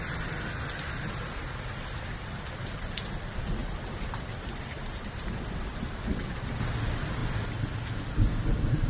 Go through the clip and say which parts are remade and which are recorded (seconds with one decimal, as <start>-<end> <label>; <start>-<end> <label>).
0.0-3.6 recorded; 3.6-4.6 remade; 4.6-8.9 recorded